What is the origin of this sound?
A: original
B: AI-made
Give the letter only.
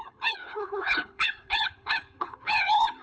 B